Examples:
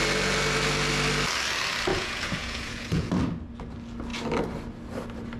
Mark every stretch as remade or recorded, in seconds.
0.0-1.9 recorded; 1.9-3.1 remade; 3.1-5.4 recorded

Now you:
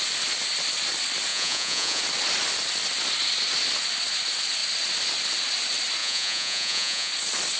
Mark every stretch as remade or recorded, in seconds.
0.0-1.3 recorded; 1.3-2.0 remade; 2.0-6.0 recorded; 6.0-7.1 remade; 7.1-7.6 recorded